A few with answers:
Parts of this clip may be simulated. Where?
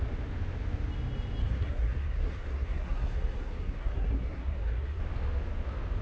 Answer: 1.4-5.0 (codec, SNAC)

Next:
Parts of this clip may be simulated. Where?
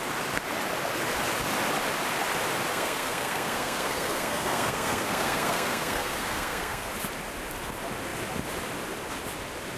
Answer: 2.7-6.9 (codec, SNAC)